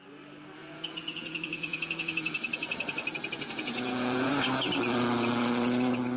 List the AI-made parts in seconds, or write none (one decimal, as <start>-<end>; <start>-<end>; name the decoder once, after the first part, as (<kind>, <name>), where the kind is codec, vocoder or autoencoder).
0.6-4.3 (vocoder, Vocos)